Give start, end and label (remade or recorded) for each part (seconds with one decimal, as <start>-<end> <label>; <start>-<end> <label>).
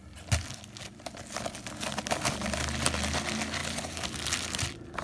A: 0.0-5.0 recorded